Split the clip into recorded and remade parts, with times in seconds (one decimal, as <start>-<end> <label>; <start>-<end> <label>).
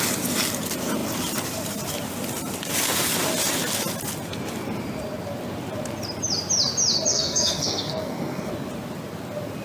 0.0-7.1 recorded; 7.1-8.5 remade; 8.5-9.6 recorded